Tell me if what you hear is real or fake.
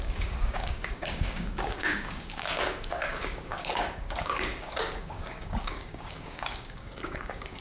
fake